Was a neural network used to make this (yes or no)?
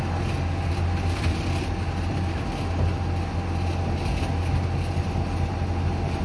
no